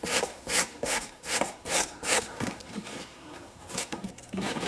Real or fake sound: fake